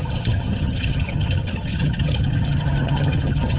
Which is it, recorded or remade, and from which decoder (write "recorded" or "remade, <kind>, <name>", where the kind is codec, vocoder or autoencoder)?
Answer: remade, vocoder, HiFi-GAN